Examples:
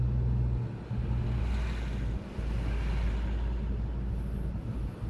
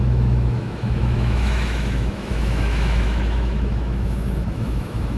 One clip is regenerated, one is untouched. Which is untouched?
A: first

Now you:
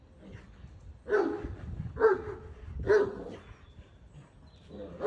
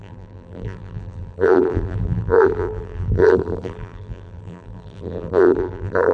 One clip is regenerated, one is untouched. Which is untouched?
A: first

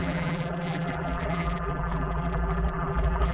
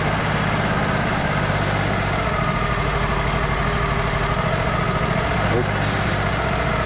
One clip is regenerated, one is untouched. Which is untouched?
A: second